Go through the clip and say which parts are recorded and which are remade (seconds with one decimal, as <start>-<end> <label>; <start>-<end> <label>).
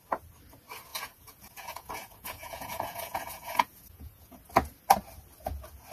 0.0-0.9 recorded; 0.9-4.4 remade; 4.4-5.9 recorded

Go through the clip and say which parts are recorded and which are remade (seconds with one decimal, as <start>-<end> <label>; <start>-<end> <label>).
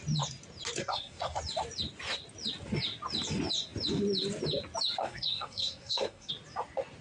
0.0-0.8 recorded; 0.8-1.4 remade; 1.4-5.0 recorded; 5.0-6.3 remade; 6.3-7.0 recorded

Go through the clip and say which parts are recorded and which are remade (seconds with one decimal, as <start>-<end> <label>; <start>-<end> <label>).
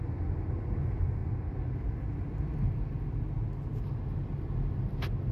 0.0-5.3 recorded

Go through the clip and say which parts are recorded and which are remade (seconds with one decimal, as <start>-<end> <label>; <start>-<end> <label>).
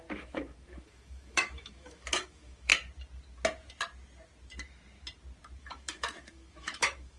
0.0-2.7 remade; 2.7-5.6 recorded; 5.6-7.2 remade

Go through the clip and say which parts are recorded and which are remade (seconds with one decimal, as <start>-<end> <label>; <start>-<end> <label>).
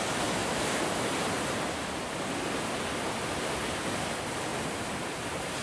0.0-0.4 recorded; 0.4-1.6 remade; 1.6-4.5 recorded; 4.5-5.6 remade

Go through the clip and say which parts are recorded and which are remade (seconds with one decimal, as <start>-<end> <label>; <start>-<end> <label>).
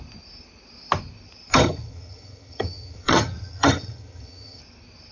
0.0-1.5 recorded; 1.5-4.6 remade; 4.6-5.1 recorded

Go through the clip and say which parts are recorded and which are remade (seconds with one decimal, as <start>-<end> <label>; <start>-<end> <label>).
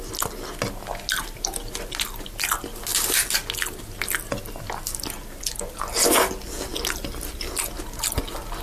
0.0-8.6 recorded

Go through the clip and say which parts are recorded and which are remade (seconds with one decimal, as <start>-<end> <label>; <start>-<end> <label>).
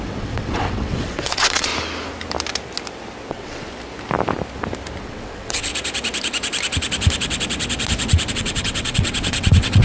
0.0-1.7 remade; 1.7-3.3 recorded; 3.3-3.7 remade; 3.7-5.0 recorded; 5.0-5.7 remade; 5.7-8.3 recorded; 8.3-9.8 remade